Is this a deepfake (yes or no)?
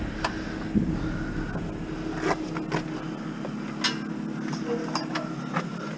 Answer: no